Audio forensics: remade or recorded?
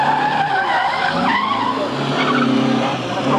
recorded